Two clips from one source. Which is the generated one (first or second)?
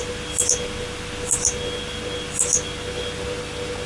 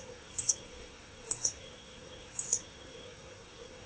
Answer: second